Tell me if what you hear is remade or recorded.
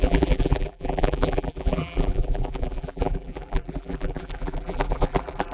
remade